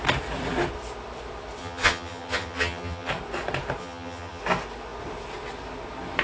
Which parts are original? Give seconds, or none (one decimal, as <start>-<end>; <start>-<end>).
0.0-1.6; 3.1-3.8; 4.4-6.2